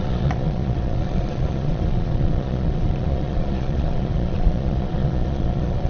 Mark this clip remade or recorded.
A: remade